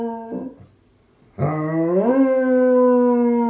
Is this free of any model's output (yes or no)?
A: yes